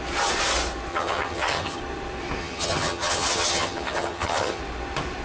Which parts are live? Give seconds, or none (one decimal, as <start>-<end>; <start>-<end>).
0.0-0.9; 1.8-2.4; 4.6-5.2